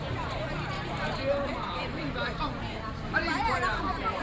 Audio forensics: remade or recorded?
remade